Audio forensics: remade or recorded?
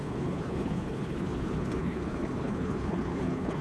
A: remade